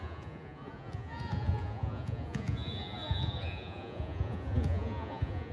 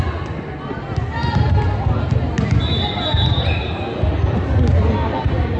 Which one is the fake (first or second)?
first